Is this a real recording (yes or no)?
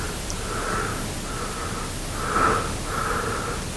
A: yes